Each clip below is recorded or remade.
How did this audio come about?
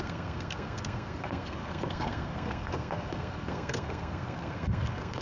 remade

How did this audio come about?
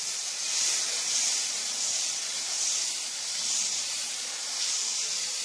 remade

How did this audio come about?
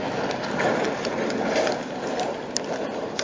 recorded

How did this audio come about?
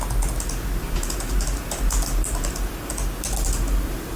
recorded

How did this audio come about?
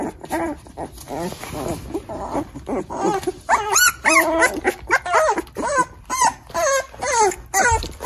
recorded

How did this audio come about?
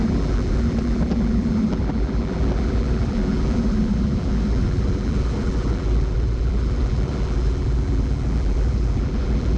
remade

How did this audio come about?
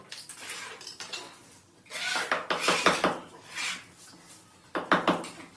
recorded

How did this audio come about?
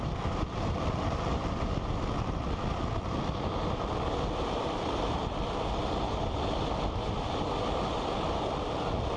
recorded